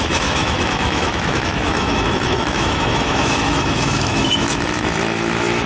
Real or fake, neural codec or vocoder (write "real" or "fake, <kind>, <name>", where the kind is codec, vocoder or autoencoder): fake, autoencoder, DAC-VAE